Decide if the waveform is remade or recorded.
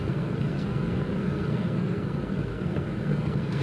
remade